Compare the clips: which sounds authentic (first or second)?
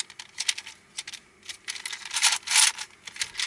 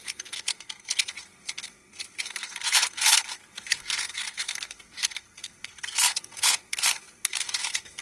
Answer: first